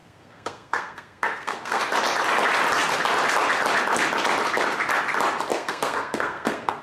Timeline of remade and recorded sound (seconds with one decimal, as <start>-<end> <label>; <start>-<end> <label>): 0.0-1.8 remade; 1.8-5.5 recorded; 5.5-6.8 remade

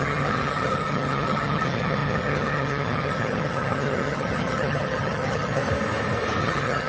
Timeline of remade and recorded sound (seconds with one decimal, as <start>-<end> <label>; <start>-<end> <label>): 0.0-5.6 remade; 5.6-6.4 recorded; 6.4-6.9 remade

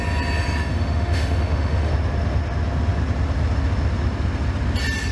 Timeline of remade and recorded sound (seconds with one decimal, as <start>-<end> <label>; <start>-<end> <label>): 0.0-0.7 recorded; 0.7-1.9 remade; 1.9-5.1 recorded

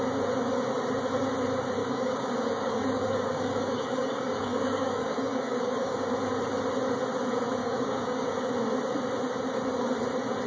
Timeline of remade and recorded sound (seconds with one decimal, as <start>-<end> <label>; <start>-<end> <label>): 0.0-1.8 recorded; 1.8-6.1 remade; 6.1-7.6 recorded; 7.6-8.5 remade; 8.5-10.5 recorded

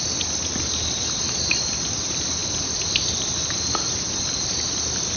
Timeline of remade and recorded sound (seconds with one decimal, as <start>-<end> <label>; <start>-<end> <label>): 0.0-5.2 recorded